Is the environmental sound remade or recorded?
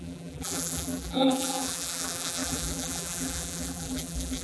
remade